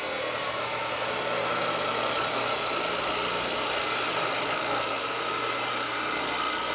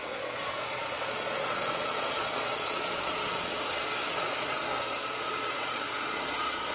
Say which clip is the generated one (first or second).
second